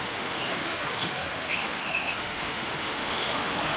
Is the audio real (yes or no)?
no